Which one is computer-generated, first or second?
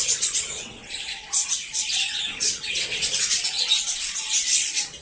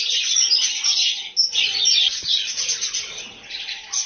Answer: first